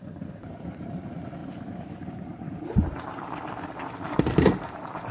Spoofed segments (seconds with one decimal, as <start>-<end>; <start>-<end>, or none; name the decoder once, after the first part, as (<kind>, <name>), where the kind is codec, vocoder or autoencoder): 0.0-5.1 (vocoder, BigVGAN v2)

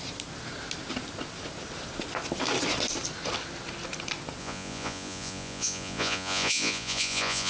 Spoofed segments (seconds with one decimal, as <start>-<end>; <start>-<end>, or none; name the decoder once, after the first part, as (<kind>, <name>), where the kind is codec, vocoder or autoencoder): 4.4-7.5 (vocoder, Vocos)

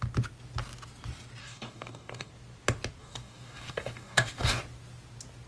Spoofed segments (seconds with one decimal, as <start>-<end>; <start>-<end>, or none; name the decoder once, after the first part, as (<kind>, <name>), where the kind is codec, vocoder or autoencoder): 1.4-2.3 (codec, DAC); 3.0-4.6